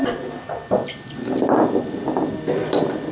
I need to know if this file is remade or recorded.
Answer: recorded